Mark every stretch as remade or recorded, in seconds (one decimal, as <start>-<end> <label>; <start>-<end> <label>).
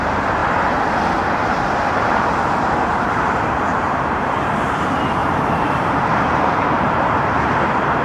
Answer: 0.0-0.4 remade; 0.4-1.9 recorded; 1.9-8.0 remade